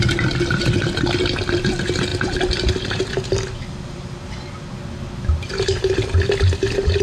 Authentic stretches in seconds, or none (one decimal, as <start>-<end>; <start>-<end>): 0.0-7.0